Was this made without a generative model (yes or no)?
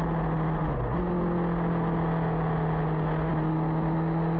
yes